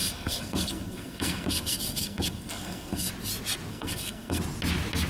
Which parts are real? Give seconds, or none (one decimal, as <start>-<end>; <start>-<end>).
3.1-3.7; 4.4-5.1